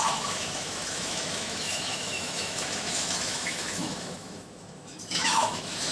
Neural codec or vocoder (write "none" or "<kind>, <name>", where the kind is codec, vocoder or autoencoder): autoencoder, DAC-VAE